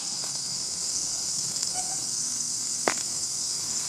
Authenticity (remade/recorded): remade